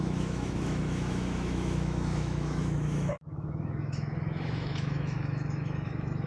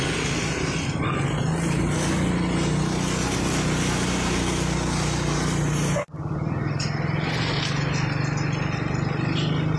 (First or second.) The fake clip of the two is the first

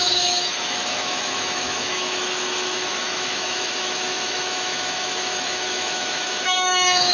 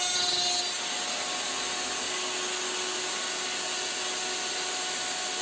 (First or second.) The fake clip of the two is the first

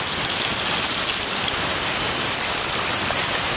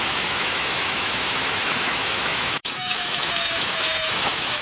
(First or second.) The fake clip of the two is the second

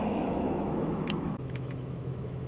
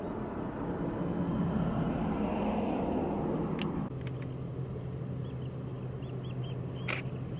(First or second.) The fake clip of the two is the first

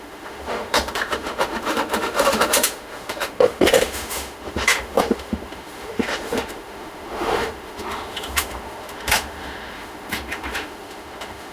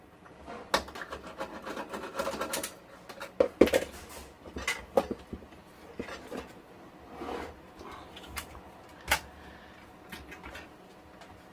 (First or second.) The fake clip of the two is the first